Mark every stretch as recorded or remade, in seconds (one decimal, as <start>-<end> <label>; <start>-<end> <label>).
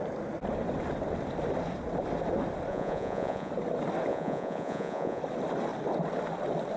0.0-2.7 recorded; 2.7-3.5 remade; 3.5-4.1 recorded; 4.1-5.2 remade; 5.2-6.8 recorded